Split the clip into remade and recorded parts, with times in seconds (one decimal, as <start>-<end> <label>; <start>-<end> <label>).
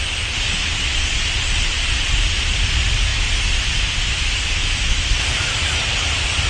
0.0-6.5 recorded